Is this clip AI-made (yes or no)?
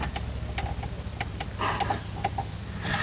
no